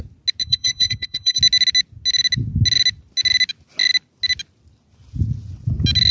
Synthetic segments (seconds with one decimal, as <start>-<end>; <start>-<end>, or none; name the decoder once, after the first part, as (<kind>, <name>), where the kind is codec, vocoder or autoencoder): 0.4-1.4 (codec, HILCodec)